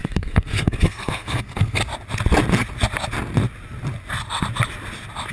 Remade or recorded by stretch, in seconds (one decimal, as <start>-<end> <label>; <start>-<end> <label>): 0.0-1.8 remade; 1.8-5.3 recorded